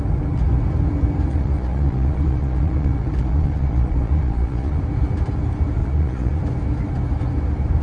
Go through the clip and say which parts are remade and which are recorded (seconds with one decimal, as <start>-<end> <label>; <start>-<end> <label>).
0.0-1.3 recorded; 1.3-4.8 remade; 4.8-5.8 recorded; 5.8-6.4 remade; 6.4-7.8 recorded